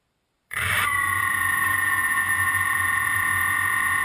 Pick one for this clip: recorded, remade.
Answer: remade